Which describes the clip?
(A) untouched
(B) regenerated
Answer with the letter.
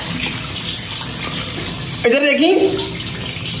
A